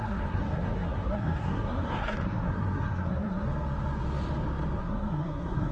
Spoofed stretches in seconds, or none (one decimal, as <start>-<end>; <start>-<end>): 0.0-3.5; 4.8-5.7